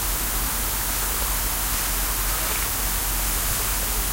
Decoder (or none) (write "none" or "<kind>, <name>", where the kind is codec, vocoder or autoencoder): none